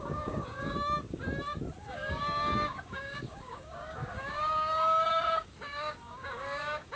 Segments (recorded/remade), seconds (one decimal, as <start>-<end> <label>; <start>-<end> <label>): 0.0-1.2 remade; 1.2-1.8 recorded; 1.8-7.0 remade